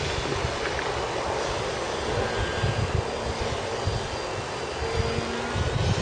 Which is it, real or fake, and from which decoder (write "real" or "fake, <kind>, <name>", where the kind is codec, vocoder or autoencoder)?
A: real